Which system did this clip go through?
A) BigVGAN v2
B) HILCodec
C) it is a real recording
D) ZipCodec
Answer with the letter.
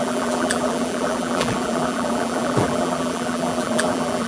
A